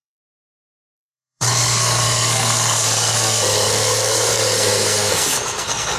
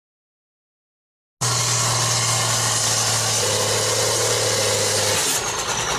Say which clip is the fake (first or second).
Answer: first